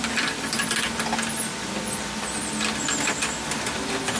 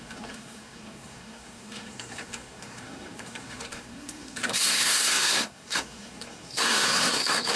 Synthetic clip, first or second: second